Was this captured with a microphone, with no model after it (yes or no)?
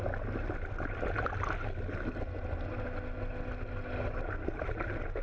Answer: yes